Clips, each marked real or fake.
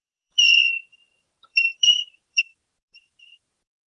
fake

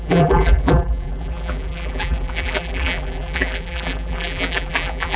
fake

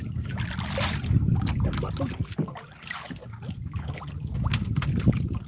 real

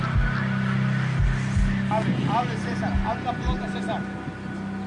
real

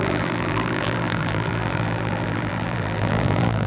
fake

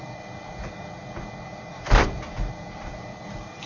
fake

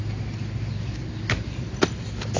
real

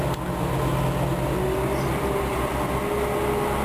real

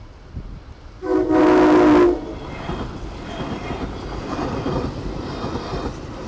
real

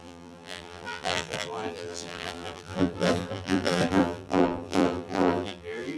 fake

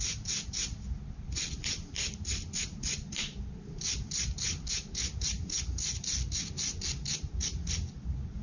real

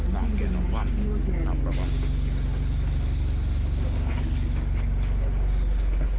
real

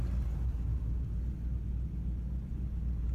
real